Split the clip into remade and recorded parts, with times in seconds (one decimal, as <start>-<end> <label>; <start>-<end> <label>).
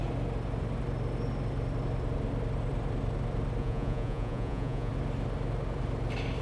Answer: 0.0-3.6 recorded; 3.6-4.9 remade; 4.9-6.4 recorded